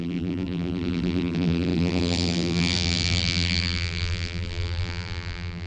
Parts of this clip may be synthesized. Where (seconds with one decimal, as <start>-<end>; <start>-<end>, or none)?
0.0-5.7